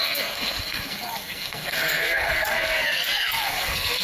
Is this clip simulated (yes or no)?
yes